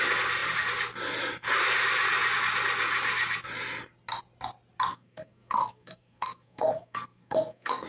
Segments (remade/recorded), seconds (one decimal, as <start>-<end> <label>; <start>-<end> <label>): 0.0-4.9 recorded; 4.9-7.9 remade